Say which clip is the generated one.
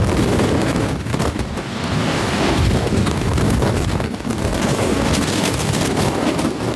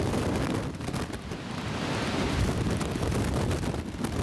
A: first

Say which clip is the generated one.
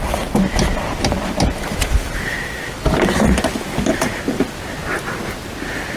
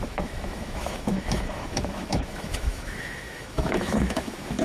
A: second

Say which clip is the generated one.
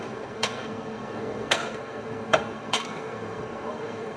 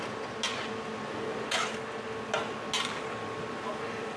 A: first